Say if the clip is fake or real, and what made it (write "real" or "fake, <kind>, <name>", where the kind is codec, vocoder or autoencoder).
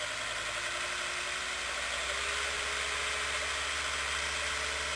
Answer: real